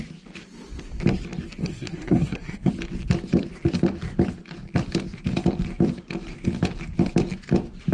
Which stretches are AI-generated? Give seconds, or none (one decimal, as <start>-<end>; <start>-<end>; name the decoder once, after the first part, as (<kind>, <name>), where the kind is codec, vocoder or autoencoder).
1.6-2.7 (codec, SNAC)